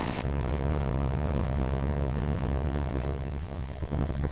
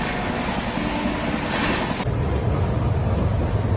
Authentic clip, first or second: second